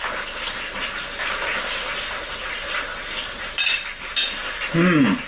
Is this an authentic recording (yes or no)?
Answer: yes